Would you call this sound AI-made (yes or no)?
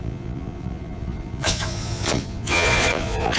yes